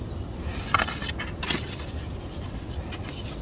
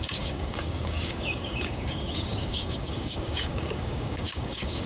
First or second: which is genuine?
first